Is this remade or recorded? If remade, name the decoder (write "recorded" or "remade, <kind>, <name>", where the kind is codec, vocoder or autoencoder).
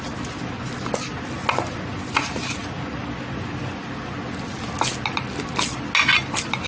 recorded